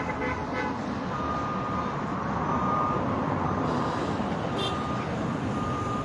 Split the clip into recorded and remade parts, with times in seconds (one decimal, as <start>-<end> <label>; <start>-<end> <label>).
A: 0.0-0.4 remade; 0.4-4.0 recorded; 4.0-6.0 remade